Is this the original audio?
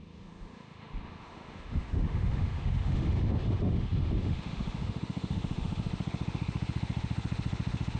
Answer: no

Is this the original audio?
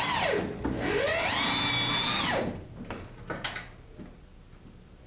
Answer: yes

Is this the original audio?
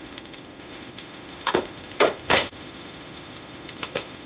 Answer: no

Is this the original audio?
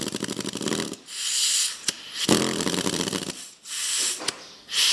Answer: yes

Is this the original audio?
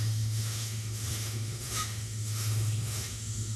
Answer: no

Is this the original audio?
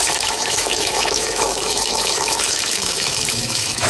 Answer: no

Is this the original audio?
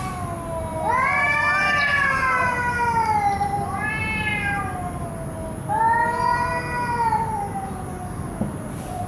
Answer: yes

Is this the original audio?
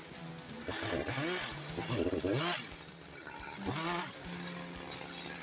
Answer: yes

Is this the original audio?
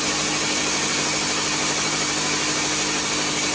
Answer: yes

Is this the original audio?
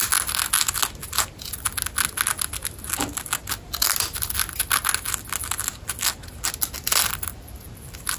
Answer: yes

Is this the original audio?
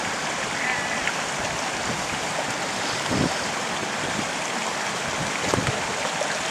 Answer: yes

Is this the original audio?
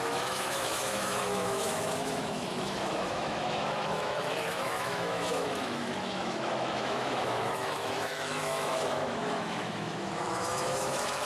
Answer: no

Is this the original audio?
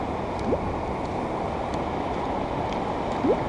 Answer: yes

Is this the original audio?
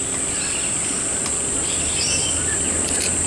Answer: yes